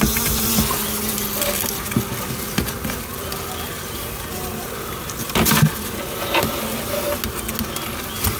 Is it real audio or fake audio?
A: real